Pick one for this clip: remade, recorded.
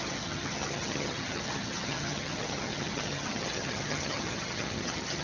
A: remade